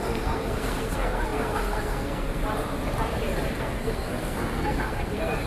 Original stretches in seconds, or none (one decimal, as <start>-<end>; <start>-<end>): 2.4-3.5